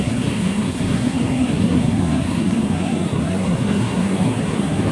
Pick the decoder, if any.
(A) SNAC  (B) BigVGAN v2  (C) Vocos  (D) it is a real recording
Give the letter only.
A